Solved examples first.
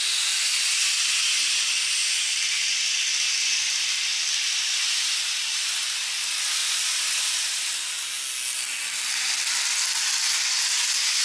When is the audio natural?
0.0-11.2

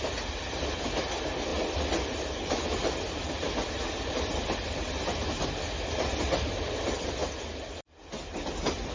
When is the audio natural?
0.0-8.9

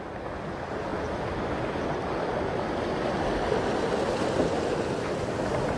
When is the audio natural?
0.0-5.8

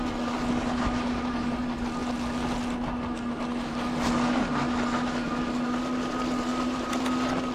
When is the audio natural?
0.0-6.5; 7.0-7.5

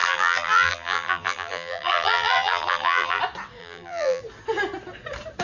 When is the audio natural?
3.2-3.6; 4.2-5.4

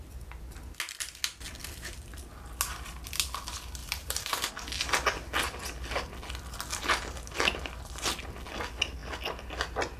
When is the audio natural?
0.0-3.8; 4.5-10.0

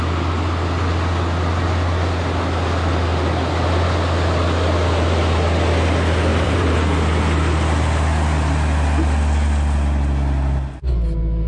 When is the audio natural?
0.0-6.3; 6.8-11.5

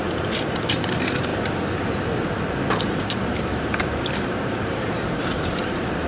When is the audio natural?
1.3-2.7; 3.3-3.8